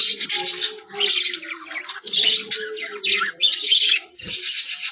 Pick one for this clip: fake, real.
real